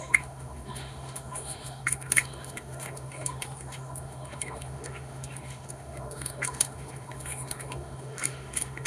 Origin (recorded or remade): remade